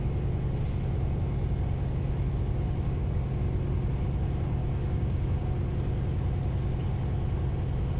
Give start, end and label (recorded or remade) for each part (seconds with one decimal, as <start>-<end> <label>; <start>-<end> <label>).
0.0-4.6 recorded; 4.6-5.4 remade; 5.4-8.0 recorded